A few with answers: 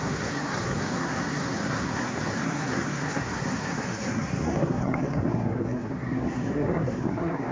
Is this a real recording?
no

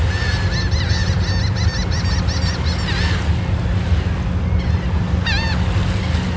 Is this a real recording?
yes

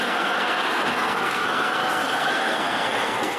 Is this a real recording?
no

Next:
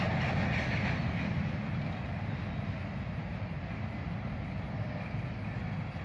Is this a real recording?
yes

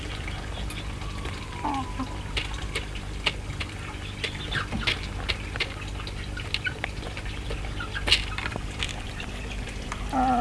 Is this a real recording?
yes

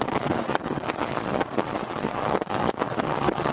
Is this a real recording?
no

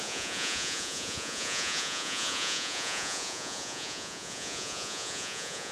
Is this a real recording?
no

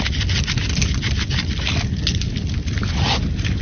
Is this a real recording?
yes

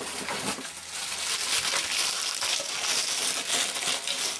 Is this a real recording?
yes